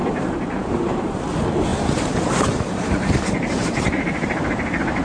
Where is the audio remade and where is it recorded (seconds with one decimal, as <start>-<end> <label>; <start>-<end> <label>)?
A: 0.0-1.2 remade; 1.2-1.7 recorded; 1.7-5.0 remade